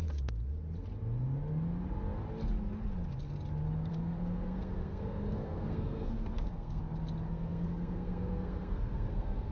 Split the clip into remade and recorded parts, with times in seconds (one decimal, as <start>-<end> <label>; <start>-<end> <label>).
0.0-3.9 recorded; 3.9-6.8 remade; 6.8-7.3 recorded; 7.3-9.5 remade